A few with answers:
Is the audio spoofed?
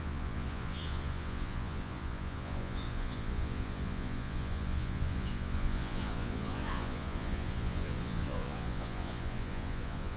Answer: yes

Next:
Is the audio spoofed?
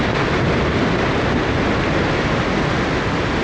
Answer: no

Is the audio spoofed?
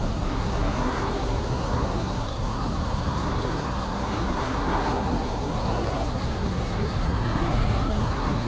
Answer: yes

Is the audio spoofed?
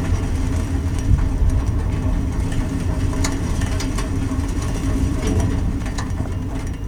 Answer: yes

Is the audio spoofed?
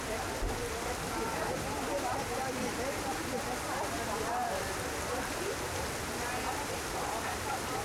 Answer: yes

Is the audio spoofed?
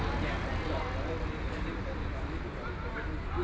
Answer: no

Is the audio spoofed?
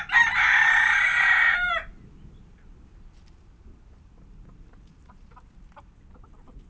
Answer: no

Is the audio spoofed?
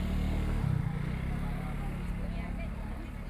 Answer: no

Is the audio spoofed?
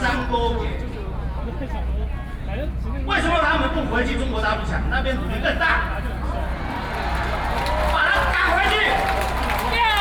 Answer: no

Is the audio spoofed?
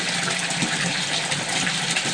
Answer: no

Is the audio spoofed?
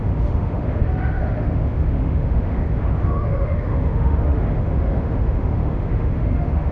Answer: yes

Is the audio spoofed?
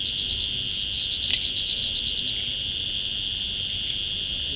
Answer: no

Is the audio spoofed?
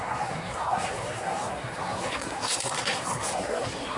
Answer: yes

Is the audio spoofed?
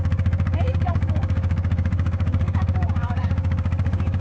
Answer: yes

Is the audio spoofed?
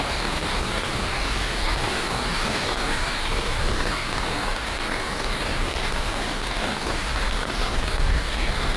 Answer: yes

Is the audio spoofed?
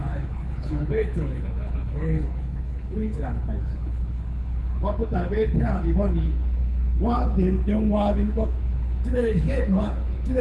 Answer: yes